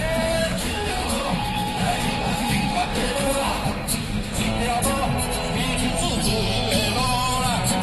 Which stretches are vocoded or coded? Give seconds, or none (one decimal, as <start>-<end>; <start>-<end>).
0.4-4.5